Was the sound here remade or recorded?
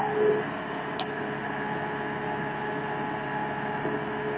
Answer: recorded